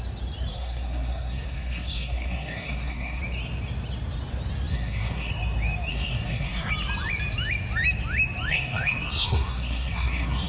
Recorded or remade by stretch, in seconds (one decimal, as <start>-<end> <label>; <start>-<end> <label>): 0.0-0.5 recorded; 0.5-3.2 remade; 3.2-4.7 recorded; 4.7-5.3 remade; 5.3-5.9 recorded; 5.9-6.7 remade; 6.7-8.5 recorded; 8.5-10.5 remade